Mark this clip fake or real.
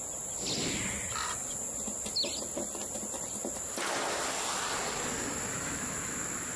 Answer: real